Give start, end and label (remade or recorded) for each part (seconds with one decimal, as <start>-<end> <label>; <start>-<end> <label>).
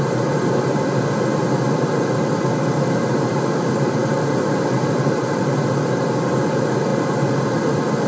0.0-8.1 recorded